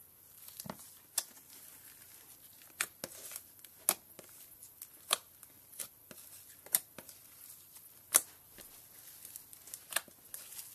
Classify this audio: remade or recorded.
recorded